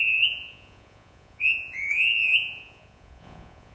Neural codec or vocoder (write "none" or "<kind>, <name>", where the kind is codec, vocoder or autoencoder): vocoder, Vocos